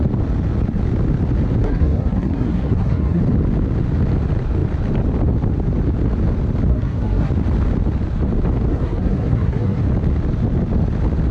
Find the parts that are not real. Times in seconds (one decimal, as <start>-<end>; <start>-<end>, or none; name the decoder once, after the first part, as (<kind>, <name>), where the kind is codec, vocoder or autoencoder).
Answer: 1.6-3.2 (codec, SNAC); 6.7-7.3; 8.7-9.8